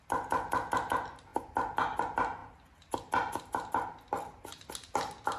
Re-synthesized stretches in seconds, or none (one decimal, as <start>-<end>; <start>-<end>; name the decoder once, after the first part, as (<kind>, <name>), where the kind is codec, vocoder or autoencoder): none